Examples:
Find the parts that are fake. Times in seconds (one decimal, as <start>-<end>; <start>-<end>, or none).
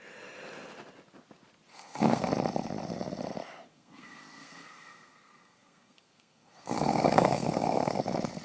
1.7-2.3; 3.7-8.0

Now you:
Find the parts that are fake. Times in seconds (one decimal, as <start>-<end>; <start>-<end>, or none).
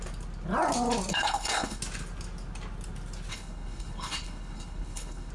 1.1-1.8; 3.3-5.3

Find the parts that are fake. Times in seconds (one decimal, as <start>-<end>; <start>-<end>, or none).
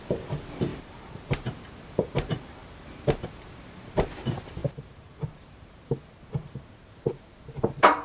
0.7-4.1; 4.6-6.7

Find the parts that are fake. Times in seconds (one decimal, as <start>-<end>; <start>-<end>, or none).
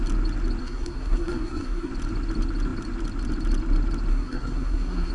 0.6-1.9; 4.1-5.1